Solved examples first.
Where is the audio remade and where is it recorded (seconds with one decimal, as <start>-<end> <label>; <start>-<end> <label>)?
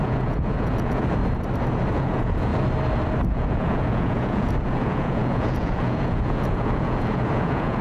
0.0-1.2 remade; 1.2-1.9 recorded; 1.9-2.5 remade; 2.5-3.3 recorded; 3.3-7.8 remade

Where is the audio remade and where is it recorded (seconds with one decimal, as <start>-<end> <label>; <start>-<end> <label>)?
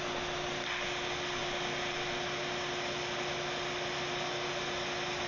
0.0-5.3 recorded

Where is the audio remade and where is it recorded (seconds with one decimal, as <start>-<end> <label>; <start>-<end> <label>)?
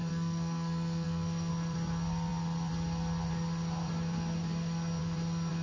0.0-1.5 remade; 1.5-5.6 recorded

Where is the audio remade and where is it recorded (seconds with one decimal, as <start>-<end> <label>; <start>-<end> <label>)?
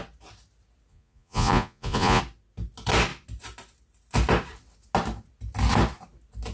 0.0-0.9 recorded; 0.9-2.2 remade; 2.2-6.5 recorded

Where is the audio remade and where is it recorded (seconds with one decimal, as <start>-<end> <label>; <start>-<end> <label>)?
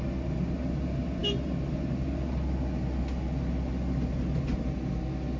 0.0-5.4 recorded